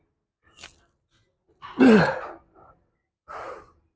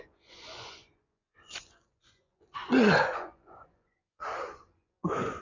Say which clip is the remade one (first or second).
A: second